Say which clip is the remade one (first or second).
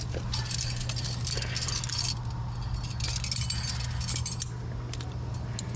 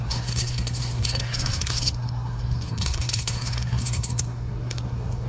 second